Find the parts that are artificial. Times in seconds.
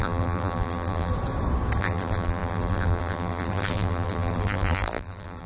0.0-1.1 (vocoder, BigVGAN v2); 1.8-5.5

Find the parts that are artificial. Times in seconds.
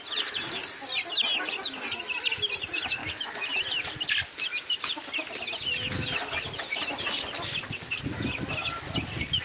none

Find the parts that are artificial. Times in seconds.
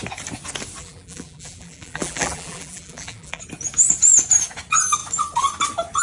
0.8-3.4 (vocoder, BigVGAN v2)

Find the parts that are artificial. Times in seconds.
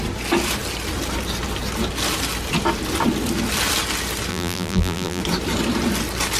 4.3-5.2 (vocoder, BigVGAN v2)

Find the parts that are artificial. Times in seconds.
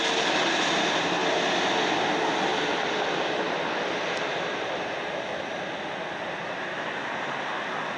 none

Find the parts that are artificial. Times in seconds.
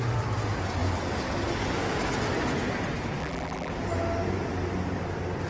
3.2-3.7 (vocoder, BigVGAN v2)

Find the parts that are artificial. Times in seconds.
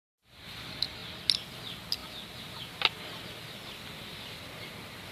4.1-5.1 (vocoder, BigVGAN v2)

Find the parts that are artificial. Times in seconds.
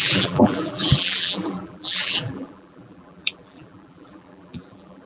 0.0-5.1 (vocoder, BigVGAN v2)